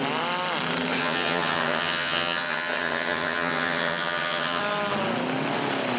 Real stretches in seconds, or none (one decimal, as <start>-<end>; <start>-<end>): 0.0-1.0; 4.6-6.0